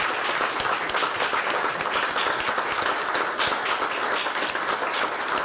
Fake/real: real